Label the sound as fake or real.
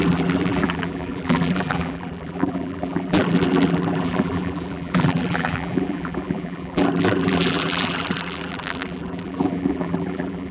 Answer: fake